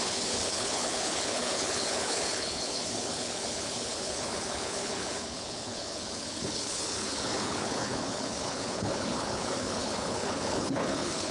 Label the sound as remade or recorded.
remade